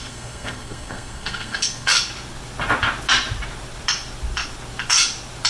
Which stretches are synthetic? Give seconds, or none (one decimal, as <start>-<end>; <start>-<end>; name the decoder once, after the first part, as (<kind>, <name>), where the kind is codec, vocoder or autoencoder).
0.0-1.9 (codec, SNAC)